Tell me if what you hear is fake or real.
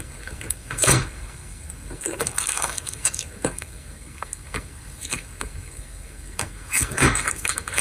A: fake